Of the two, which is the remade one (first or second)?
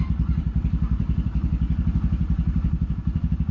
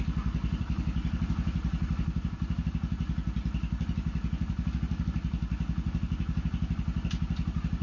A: first